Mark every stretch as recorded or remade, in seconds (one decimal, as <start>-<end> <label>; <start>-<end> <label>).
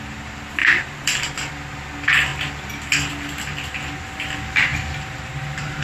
0.0-0.6 recorded; 0.6-1.5 remade; 1.5-4.7 recorded; 4.7-5.8 remade